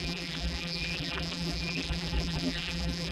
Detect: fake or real fake